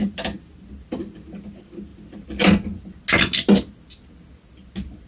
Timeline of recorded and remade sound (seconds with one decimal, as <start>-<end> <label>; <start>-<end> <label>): 0.0-0.9 remade; 0.9-5.1 recorded